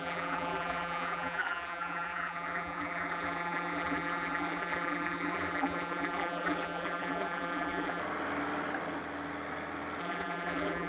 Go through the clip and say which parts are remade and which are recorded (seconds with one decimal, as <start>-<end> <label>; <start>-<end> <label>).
0.0-8.0 remade; 8.0-10.0 recorded; 10.0-10.9 remade